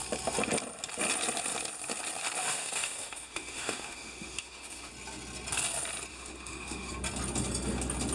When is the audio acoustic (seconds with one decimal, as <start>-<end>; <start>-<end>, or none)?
0.0-2.4; 4.9-6.1; 6.9-8.1